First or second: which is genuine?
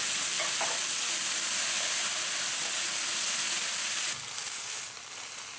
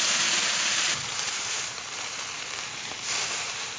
first